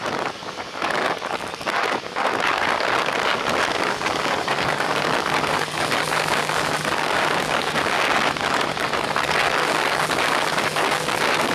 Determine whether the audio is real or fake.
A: fake